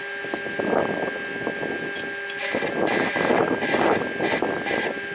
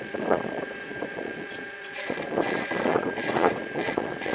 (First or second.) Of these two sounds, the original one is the first